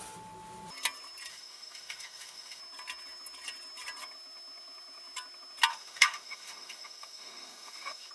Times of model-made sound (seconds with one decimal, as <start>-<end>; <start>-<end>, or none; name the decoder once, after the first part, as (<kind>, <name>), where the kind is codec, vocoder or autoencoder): 1.3-2.6 (autoencoder, DAC-VAE); 5.7-8.1